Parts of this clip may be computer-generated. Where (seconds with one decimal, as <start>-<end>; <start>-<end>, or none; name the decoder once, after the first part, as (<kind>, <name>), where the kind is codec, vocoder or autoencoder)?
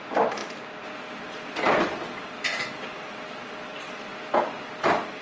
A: none